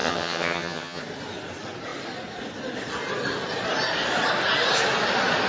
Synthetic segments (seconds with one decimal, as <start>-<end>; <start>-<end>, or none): 0.0-1.0